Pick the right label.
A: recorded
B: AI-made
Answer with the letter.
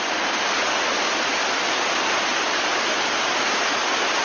B